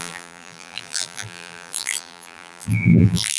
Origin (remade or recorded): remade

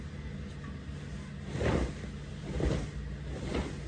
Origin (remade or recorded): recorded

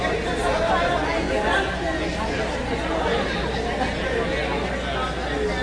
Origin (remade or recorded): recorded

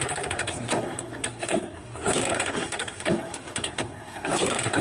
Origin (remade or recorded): remade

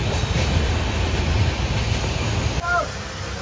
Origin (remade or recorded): recorded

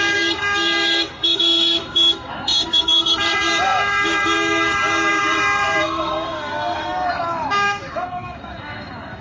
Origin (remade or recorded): remade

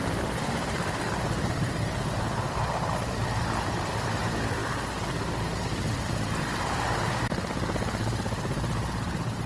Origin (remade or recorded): remade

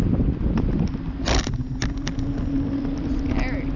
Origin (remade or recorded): recorded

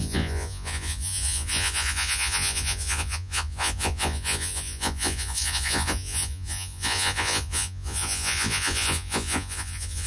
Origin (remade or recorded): remade